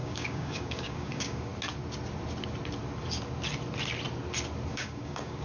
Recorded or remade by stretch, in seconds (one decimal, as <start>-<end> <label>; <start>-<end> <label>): 0.0-1.5 remade; 1.5-4.7 recorded; 4.7-5.4 remade